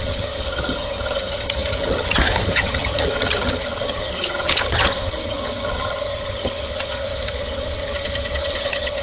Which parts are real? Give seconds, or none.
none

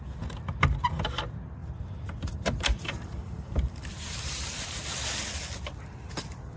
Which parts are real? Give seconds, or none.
0.0-1.6; 4.7-6.6

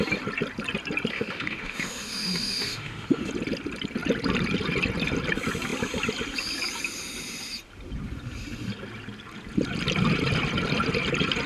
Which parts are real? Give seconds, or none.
0.0-1.1; 3.3-11.5